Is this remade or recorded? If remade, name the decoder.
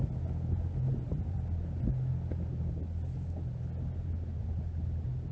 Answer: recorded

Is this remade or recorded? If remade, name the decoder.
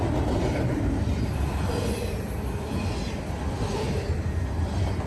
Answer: recorded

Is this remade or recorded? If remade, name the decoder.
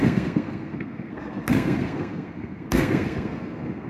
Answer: remade, codec, SNAC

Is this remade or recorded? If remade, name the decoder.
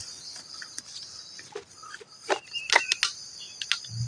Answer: recorded